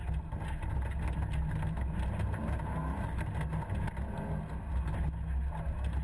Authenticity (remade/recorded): recorded